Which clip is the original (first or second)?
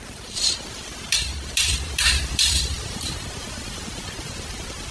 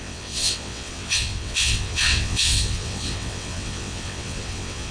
first